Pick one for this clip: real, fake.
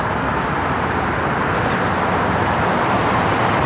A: fake